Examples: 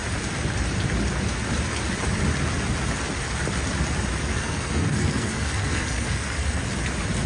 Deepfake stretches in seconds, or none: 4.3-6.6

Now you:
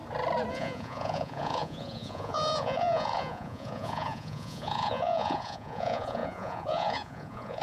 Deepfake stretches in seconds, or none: 0.5-7.6

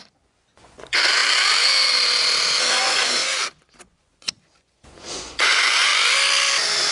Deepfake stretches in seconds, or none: 0.0-1.2; 2.7-5.9

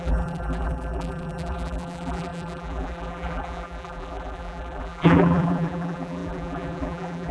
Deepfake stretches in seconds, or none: 0.0-7.3

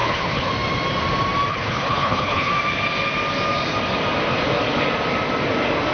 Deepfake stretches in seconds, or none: 0.0-0.5; 1.5-2.5